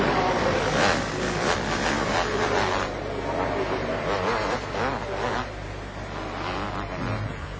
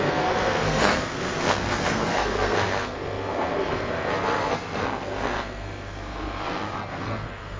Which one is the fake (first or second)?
second